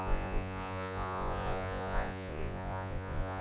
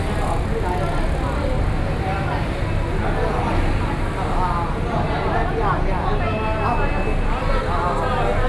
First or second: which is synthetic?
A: first